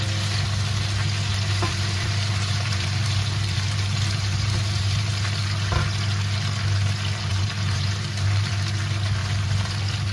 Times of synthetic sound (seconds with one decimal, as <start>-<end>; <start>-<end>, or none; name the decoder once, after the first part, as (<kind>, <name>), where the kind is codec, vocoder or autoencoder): 1.3-5.1 (vocoder, BigVGAN v2); 7.3-8.5; 9.2-9.7